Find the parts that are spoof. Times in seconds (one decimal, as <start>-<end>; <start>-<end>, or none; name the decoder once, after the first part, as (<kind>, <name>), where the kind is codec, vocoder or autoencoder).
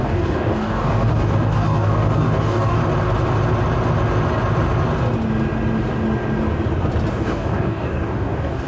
0.0-2.8 (codec, DAC); 7.1-8.7